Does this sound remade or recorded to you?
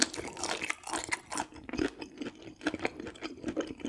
recorded